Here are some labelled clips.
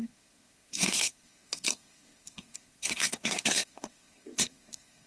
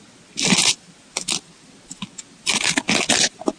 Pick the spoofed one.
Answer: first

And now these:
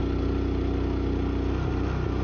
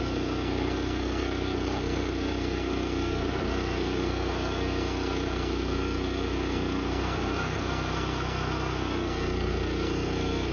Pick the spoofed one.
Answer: second